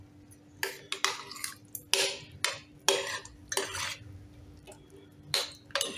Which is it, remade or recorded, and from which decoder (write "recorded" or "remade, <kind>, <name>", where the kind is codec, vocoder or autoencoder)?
recorded